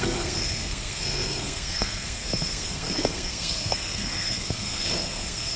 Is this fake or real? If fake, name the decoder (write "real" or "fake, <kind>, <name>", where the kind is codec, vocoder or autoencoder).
fake, codec, SNAC